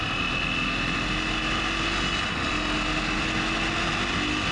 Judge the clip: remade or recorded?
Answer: recorded